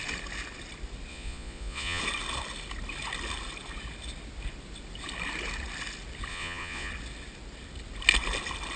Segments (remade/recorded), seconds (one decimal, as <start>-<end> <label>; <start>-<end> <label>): 0.0-1.1 recorded; 1.1-2.0 remade; 2.0-6.3 recorded; 6.3-6.9 remade; 6.9-8.8 recorded